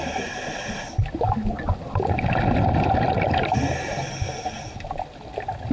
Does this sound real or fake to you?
real